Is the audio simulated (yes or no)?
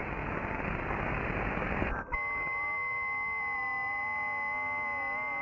no